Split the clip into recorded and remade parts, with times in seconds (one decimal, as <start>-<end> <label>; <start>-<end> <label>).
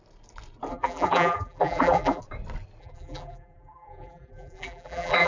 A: 0.0-0.7 recorded; 0.7-2.2 remade; 2.2-2.8 recorded; 2.8-5.3 remade